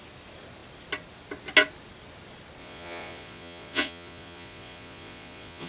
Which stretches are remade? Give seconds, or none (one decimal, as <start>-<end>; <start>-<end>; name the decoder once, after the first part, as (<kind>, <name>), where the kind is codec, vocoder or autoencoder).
2.6-5.7 (vocoder, Vocos)